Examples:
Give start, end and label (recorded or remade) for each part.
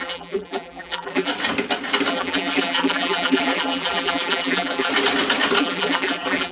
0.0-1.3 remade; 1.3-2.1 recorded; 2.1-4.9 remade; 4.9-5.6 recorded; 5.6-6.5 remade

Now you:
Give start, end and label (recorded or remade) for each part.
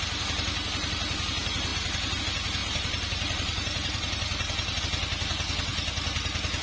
0.0-2.6 recorded; 2.6-4.8 remade; 4.8-6.6 recorded